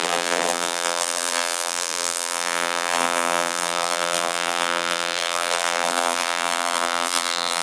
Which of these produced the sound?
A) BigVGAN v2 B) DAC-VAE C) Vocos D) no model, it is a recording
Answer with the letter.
A